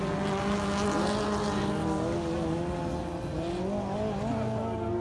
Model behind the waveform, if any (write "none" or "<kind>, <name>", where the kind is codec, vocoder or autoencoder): none